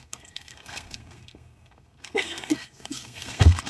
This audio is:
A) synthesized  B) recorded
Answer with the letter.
A